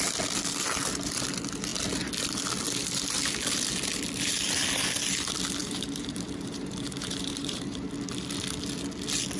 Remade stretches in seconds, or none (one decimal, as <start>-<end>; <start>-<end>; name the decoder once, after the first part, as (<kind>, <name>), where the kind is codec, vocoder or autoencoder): 5.6-7.9 (vocoder, BigVGAN v2)